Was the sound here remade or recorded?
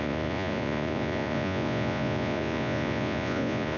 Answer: remade